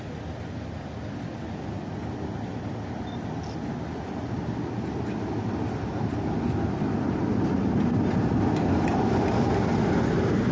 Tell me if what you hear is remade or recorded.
recorded